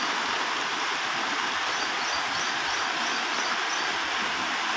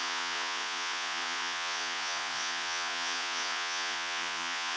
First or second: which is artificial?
second